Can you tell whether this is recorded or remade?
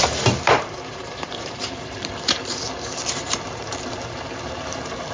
remade